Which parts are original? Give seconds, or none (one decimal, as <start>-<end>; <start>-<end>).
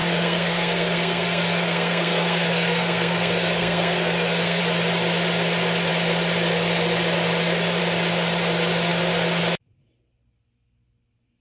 4.6-11.4